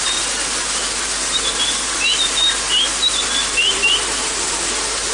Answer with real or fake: real